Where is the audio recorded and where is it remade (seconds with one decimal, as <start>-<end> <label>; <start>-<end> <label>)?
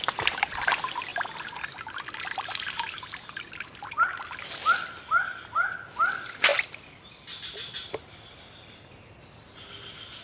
0.0-10.2 recorded